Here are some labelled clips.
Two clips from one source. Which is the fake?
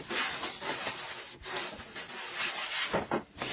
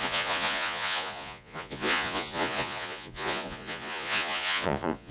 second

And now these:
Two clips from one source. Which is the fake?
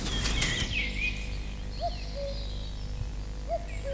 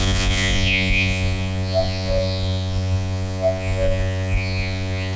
second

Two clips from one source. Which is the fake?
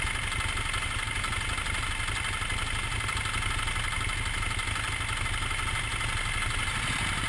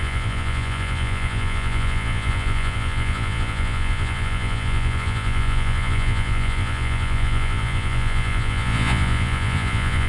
second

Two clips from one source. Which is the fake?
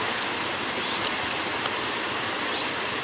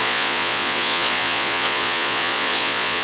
second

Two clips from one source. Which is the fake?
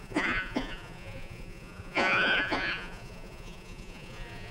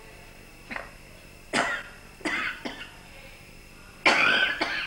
first